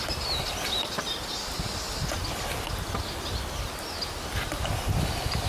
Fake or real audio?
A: real